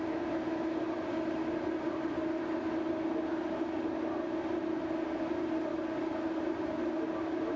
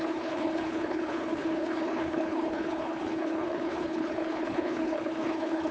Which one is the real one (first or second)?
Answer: first